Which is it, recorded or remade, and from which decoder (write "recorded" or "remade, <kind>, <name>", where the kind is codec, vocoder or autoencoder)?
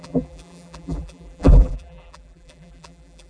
remade, vocoder, BigVGAN v2